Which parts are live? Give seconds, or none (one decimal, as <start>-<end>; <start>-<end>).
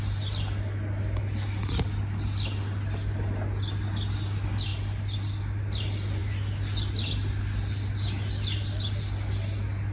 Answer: 0.0-9.9